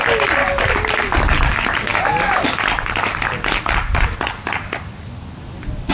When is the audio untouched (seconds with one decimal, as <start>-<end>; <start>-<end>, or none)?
0.0-5.9